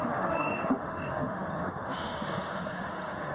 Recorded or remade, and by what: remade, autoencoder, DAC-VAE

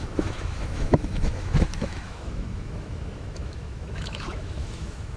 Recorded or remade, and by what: remade, autoencoder, DAC-VAE